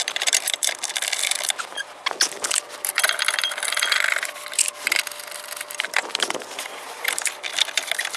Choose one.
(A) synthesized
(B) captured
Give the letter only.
A